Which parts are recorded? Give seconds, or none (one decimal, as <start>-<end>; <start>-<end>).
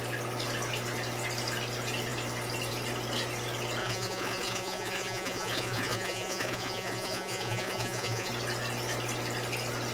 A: 0.0-3.8; 8.3-9.9